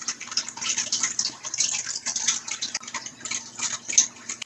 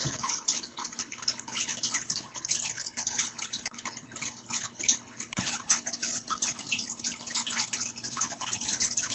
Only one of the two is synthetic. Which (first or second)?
second